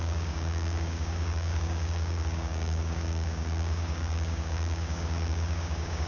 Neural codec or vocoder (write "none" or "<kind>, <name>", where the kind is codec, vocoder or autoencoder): codec, DAC